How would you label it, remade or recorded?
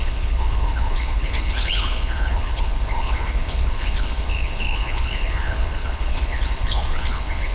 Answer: remade